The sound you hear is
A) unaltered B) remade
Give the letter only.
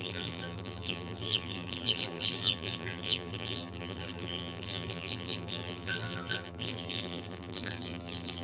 B